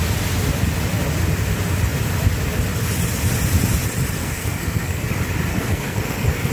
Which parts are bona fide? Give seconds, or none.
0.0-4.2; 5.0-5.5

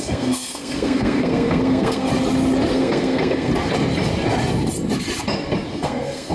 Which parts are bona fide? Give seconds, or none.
2.1-2.7; 3.5-5.7

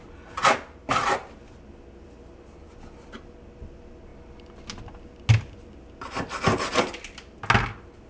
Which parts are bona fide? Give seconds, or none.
0.0-8.1

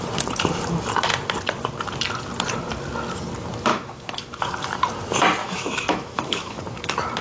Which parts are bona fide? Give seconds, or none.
0.0-3.7; 4.4-5.4; 6.6-7.2

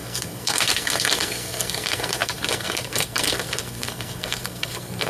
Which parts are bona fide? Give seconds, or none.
none